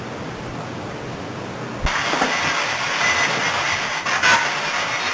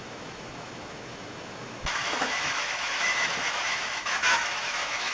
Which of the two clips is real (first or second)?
first